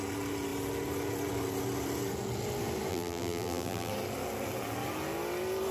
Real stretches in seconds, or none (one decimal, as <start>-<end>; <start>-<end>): 0.0-2.9; 3.9-5.7

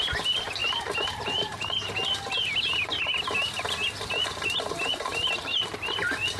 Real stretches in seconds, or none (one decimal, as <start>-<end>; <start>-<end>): 0.0-6.4

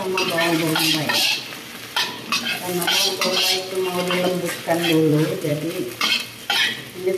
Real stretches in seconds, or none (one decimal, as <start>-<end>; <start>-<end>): 1.4-5.1; 5.5-7.2